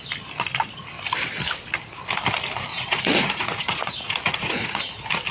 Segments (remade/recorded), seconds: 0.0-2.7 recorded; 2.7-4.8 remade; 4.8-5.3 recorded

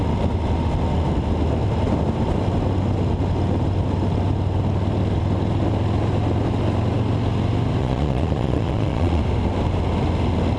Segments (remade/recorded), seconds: 0.0-7.8 recorded; 7.8-9.2 remade; 9.2-10.6 recorded

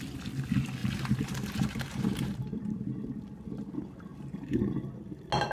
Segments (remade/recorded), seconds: 0.0-0.8 recorded; 0.8-2.8 remade; 2.8-4.1 recorded; 4.1-4.6 remade; 4.6-5.5 recorded

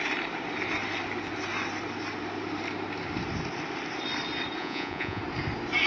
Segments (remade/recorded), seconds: 0.0-4.6 recorded; 4.6-5.2 remade; 5.2-5.9 recorded